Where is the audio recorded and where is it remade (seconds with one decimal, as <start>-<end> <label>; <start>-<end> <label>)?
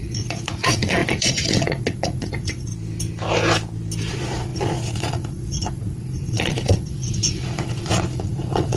0.0-2.7 remade; 2.7-4.1 recorded; 4.1-8.8 remade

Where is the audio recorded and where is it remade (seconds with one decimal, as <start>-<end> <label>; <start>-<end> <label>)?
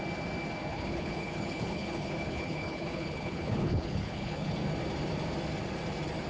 0.0-0.7 recorded; 0.7-4.5 remade; 4.5-6.3 recorded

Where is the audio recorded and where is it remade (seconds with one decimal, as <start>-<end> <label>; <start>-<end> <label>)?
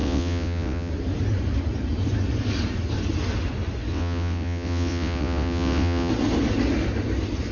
0.0-0.9 remade; 0.9-3.9 recorded; 3.9-6.1 remade; 6.1-7.5 recorded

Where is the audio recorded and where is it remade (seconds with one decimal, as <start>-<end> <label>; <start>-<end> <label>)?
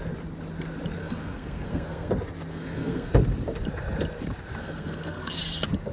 0.0-1.0 recorded; 1.0-2.1 remade; 2.1-2.5 recorded; 2.5-3.1 remade; 3.1-4.6 recorded; 4.6-5.3 remade; 5.3-5.9 recorded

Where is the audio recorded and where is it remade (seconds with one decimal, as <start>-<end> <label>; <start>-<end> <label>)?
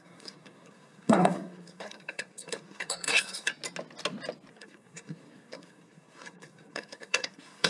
0.0-3.5 remade; 3.5-4.5 recorded; 4.5-7.7 remade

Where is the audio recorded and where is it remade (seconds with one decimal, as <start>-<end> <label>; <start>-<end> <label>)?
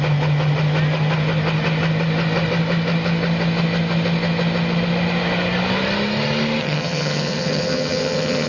0.0-6.6 recorded; 6.6-8.5 remade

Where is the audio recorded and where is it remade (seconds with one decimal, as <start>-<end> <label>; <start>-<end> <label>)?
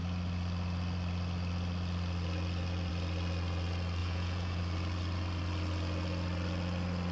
0.0-4.0 recorded; 4.0-4.6 remade; 4.6-7.1 recorded